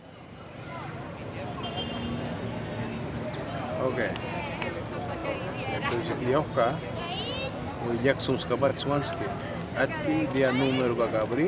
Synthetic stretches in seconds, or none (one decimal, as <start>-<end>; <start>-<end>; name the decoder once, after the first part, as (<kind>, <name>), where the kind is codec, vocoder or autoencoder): none